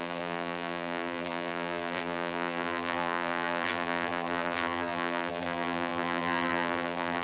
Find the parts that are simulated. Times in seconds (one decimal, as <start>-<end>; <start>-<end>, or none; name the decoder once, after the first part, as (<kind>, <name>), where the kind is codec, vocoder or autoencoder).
0.0-7.2 (vocoder, BigVGAN v2)